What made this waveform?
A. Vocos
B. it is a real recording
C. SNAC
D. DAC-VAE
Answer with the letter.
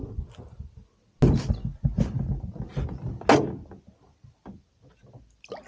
B